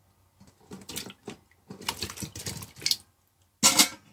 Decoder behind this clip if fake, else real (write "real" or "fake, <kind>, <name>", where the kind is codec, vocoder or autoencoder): real